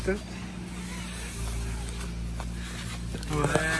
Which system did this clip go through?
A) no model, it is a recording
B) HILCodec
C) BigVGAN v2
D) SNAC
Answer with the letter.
A